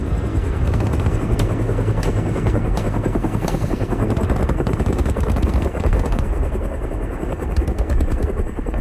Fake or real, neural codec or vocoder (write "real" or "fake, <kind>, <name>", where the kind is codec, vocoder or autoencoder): fake, codec, SNAC